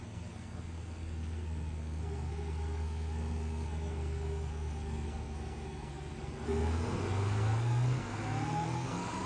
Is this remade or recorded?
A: remade